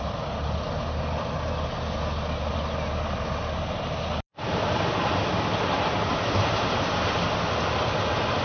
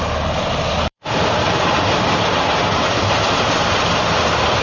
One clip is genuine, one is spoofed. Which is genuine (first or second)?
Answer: first